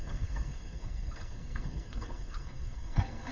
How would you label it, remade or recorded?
remade